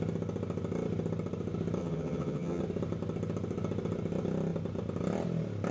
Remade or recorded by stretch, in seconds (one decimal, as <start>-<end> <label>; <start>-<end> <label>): 0.0-1.8 recorded; 1.8-2.6 remade; 2.6-5.7 recorded